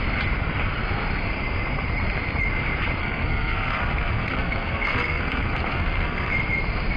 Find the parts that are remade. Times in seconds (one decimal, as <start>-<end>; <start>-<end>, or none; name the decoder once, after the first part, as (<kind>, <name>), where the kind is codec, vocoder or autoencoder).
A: 3.0-6.3 (codec, SNAC)